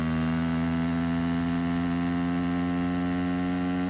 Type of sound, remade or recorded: recorded